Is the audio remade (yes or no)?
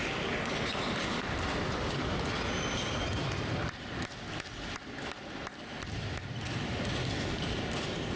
no